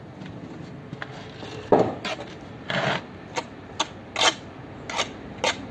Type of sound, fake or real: real